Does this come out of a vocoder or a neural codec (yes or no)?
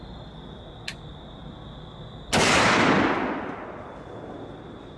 no